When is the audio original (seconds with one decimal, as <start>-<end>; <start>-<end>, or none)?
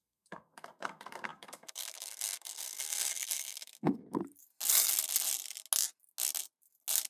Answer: 4.2-7.1